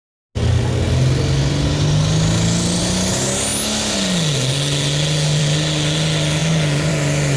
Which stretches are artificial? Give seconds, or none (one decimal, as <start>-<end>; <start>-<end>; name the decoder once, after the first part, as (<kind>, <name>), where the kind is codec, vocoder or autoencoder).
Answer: none